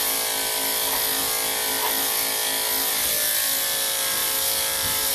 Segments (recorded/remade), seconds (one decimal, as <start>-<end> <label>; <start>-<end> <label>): 0.0-5.1 recorded